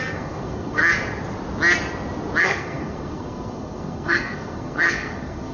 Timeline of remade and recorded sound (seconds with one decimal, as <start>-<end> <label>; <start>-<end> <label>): 0.0-0.8 remade; 0.8-2.4 recorded; 2.4-5.5 remade